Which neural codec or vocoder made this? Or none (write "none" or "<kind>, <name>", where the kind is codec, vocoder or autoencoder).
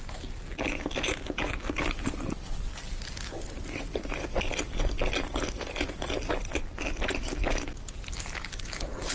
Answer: none